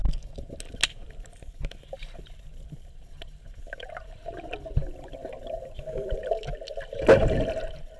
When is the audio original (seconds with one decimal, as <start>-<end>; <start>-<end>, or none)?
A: 0.0-8.0